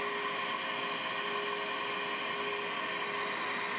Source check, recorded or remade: recorded